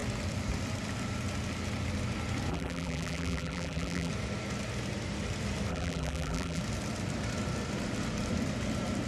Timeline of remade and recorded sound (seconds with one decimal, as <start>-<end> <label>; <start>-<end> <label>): 0.0-2.5 recorded; 2.5-4.1 remade; 4.1-5.7 recorded; 5.7-6.6 remade; 6.6-9.1 recorded